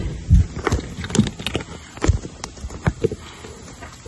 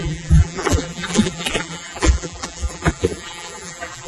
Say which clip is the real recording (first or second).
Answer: first